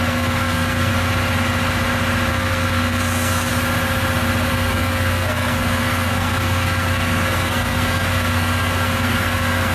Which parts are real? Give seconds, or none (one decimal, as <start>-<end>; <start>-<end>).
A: 0.9-2.3; 3.5-4.5